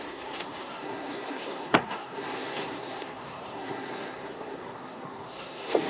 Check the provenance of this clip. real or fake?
fake